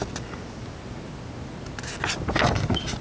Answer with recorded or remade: recorded